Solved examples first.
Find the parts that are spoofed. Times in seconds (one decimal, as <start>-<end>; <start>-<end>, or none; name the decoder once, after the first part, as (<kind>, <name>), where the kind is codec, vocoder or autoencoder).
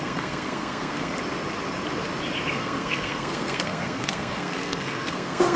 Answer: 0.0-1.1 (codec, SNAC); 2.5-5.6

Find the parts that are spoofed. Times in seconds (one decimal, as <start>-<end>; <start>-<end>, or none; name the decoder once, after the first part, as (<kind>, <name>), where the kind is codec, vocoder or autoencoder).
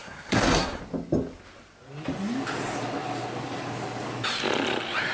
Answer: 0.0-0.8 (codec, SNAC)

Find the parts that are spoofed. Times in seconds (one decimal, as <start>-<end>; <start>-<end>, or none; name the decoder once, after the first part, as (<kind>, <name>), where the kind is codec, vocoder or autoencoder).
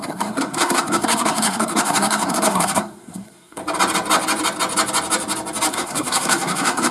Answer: 0.0-3.6 (codec, SNAC); 5.7-6.9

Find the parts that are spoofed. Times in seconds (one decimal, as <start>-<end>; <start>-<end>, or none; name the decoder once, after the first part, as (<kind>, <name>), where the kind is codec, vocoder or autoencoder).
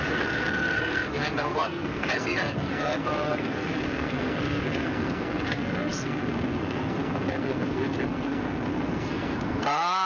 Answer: 0.0-10.1 (codec, SNAC)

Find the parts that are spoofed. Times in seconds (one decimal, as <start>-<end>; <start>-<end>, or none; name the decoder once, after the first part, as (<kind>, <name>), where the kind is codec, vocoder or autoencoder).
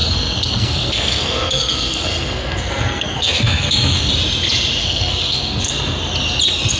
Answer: 0.0-4.1 (codec, SNAC); 4.8-5.8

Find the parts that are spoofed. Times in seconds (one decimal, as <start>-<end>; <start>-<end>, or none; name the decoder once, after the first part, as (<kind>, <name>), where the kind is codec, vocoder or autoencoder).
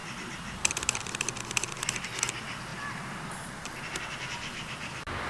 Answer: none